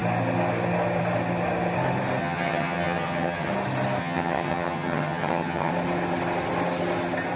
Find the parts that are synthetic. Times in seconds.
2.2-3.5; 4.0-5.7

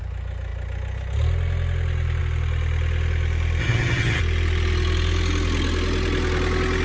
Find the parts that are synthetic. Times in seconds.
3.6-4.2

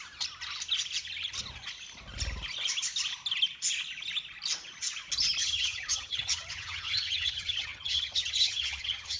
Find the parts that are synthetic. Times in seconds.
5.4-9.2

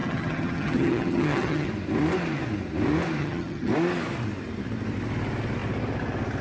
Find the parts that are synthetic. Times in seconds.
0.0-1.7; 3.2-3.7

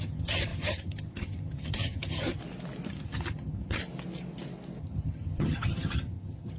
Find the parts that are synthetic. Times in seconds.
0.0-2.4; 2.9-3.8; 4.8-6.6

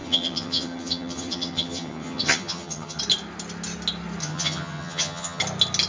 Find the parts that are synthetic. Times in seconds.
0.0-3.0; 4.2-5.4

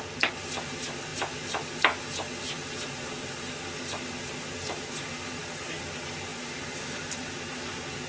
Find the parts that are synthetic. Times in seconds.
none

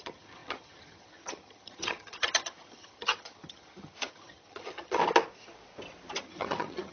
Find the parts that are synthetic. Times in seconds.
0.0-5.0; 6.2-6.9